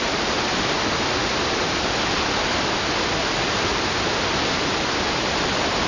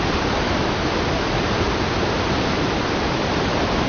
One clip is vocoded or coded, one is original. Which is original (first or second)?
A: first